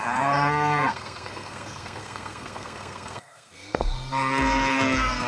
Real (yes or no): no